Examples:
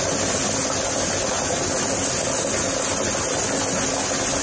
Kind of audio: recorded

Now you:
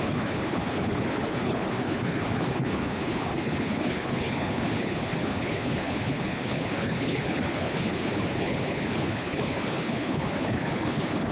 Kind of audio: remade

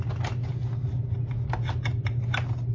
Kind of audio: recorded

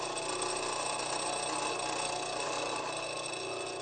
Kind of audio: recorded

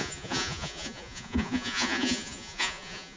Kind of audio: remade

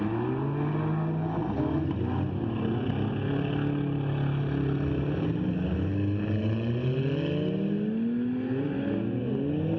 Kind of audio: recorded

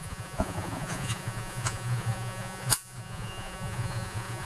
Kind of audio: remade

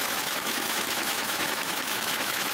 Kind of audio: remade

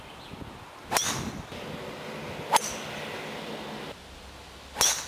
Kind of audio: recorded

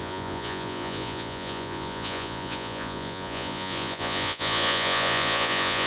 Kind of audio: remade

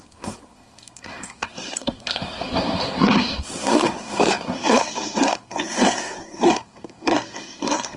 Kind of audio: remade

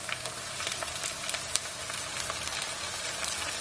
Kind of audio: remade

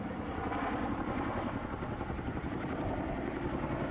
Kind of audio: recorded